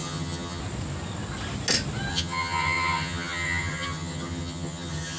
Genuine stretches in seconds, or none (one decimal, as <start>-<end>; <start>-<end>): 0.6-2.1